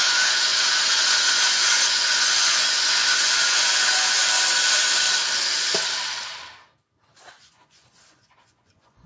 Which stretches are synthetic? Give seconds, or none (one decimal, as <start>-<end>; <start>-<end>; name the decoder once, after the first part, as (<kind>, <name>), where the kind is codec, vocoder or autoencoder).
0.0-4.2 (vocoder, Vocos); 7.3-9.1